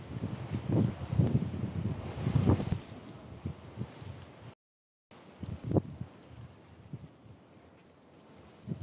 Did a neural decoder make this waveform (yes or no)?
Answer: no